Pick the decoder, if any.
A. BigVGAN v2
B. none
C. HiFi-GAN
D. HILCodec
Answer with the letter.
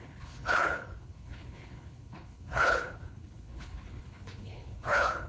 D